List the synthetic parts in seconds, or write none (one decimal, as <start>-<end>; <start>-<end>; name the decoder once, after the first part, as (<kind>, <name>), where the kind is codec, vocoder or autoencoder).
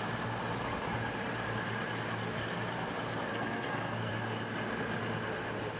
3.3-4.1 (codec, SNAC)